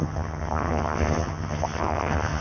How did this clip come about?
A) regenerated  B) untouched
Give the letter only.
A